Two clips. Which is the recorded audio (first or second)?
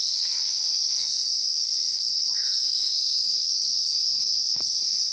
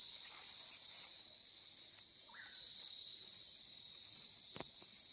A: second